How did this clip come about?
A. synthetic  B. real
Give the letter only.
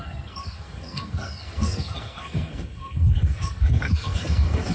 A